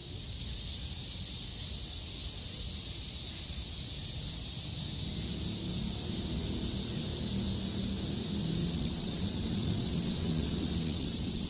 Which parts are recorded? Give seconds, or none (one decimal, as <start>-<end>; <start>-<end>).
0.0-8.6